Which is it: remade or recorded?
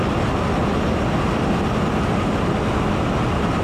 recorded